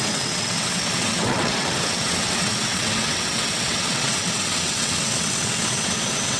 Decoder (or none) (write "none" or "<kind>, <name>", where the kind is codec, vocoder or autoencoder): vocoder, WaveNeXt